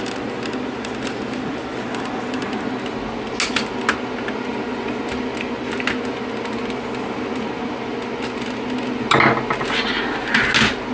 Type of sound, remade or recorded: recorded